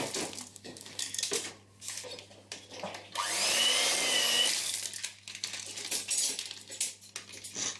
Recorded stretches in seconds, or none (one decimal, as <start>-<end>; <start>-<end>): 0.0-0.5; 1.5-7.8